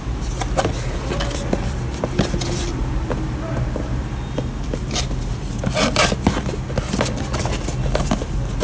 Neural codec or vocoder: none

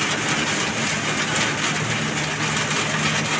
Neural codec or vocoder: none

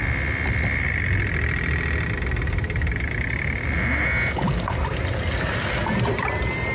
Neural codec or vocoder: none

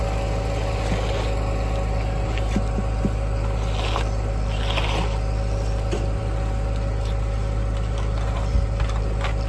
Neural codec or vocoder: none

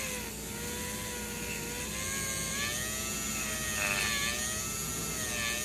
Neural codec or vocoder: none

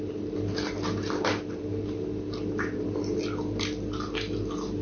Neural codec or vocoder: none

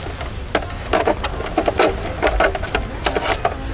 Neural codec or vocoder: none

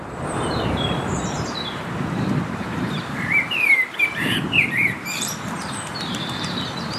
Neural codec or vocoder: vocoder, BigVGAN v2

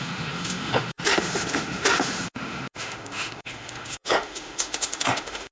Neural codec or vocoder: autoencoder, DAC-VAE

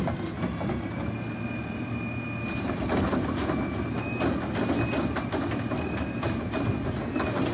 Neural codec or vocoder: none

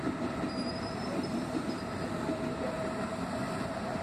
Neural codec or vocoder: vocoder, BigVGAN v2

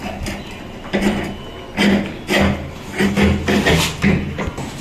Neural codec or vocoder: none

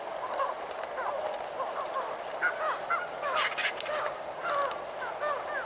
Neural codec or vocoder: none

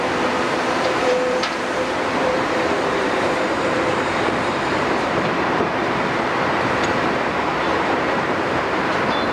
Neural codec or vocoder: vocoder, BigVGAN v2